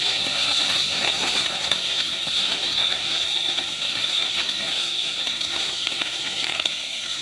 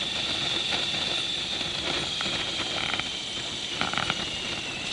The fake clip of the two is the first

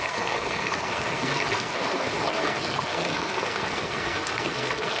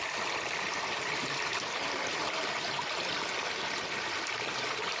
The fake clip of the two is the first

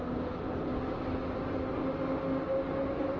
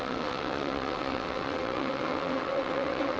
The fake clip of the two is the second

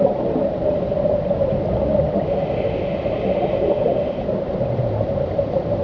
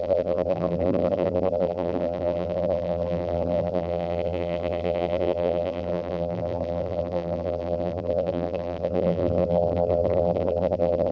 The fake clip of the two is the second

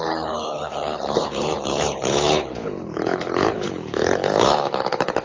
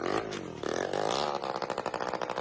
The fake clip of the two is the first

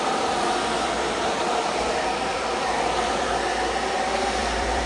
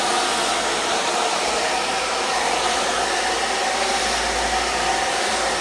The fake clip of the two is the first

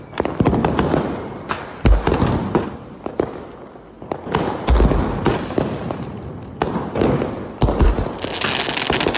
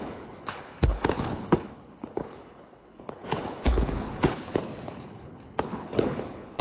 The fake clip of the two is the second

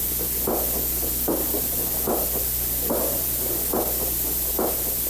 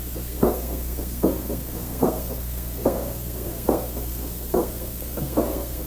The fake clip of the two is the second